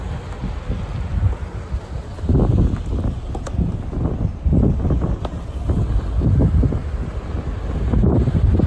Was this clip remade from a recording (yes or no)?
no